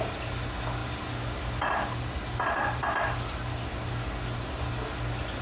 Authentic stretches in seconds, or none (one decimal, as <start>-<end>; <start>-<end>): 0.0-5.4